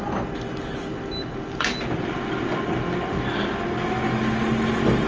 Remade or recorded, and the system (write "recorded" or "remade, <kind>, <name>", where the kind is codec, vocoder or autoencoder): recorded